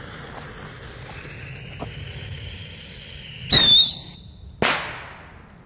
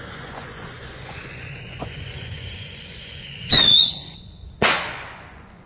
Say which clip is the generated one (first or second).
second